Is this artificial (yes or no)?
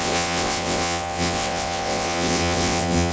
yes